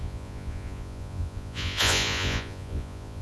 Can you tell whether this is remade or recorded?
remade